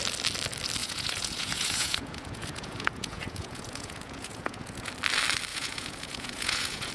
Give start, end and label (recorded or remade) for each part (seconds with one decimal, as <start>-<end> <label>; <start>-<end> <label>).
0.0-0.8 recorded; 0.8-4.9 remade; 4.9-5.5 recorded; 5.5-6.9 remade